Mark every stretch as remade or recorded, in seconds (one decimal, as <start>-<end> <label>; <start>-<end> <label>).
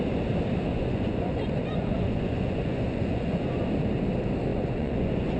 0.0-0.7 recorded; 0.7-3.7 remade; 3.7-4.5 recorded; 4.5-5.4 remade